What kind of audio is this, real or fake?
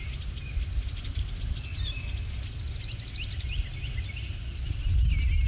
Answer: real